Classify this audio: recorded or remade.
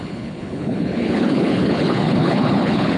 remade